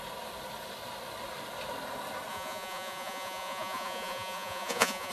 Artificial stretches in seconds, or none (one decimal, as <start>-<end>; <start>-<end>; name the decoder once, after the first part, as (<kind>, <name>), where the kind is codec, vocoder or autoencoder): 2.3-5.1 (vocoder, Vocos)